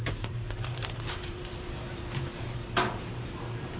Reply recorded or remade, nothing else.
remade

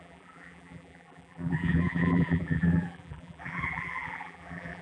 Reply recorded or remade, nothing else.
remade